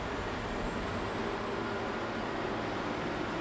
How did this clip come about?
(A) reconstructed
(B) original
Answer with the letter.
B